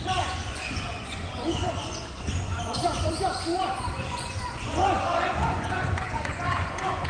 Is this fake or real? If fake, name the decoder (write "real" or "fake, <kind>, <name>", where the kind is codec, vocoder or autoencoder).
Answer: fake, vocoder, Vocos